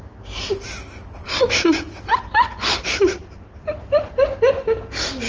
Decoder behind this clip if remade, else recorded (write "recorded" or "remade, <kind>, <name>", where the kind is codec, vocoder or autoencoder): recorded